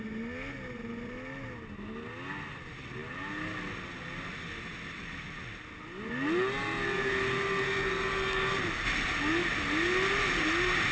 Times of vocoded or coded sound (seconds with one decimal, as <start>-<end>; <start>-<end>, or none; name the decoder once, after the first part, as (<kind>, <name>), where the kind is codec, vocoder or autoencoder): none